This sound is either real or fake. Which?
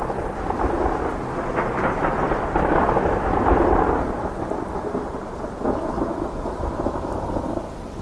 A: real